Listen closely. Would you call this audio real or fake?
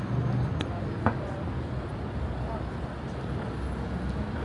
real